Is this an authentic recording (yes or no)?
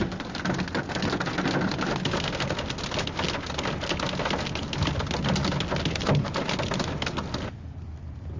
yes